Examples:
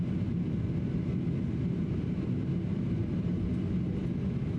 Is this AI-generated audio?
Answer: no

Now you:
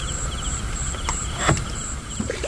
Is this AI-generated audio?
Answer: yes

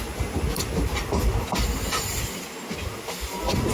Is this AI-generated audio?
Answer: no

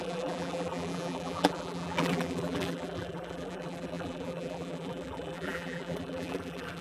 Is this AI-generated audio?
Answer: yes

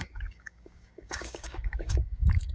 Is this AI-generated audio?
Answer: yes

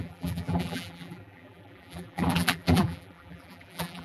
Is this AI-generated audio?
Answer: yes